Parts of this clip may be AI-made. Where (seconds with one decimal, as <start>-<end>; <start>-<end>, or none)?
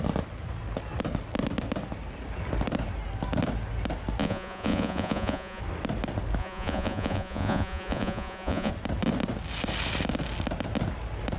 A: 4.2-5.6; 6.4-8.7